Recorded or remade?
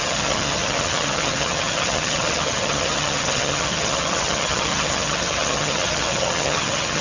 remade